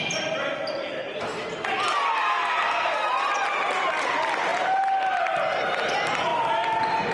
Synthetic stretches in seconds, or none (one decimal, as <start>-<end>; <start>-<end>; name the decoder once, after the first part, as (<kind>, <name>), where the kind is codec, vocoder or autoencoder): 2.3-3.1 (codec, SNAC)